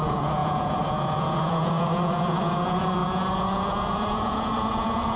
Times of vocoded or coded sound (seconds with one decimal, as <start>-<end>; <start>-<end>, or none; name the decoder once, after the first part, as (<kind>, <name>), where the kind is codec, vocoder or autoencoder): 0.0-5.2 (vocoder, Vocos)